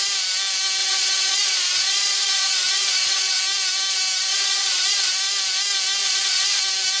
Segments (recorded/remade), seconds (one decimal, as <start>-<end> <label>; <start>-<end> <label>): 0.0-0.8 recorded; 0.8-3.4 remade; 3.4-4.3 recorded; 4.3-5.1 remade; 5.1-6.0 recorded; 6.0-6.6 remade; 6.6-7.0 recorded